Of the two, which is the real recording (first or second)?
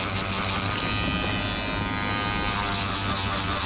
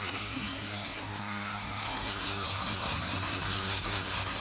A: first